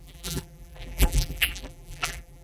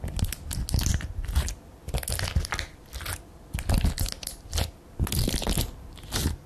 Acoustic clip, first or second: second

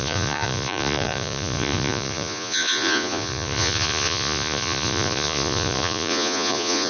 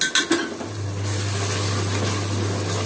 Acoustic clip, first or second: second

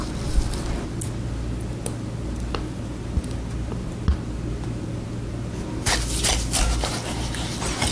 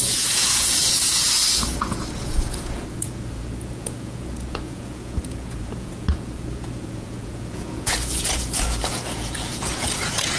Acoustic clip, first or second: first